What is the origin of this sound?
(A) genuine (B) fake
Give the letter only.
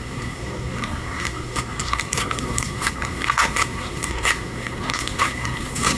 B